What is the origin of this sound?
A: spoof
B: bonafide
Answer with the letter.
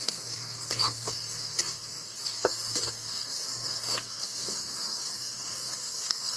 A